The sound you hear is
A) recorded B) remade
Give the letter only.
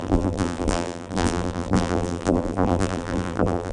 B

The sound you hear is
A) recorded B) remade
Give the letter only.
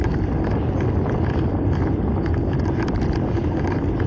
A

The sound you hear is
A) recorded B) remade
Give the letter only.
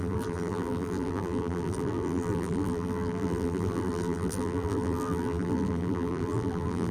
B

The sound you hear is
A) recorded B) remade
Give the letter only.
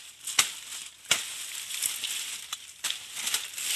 A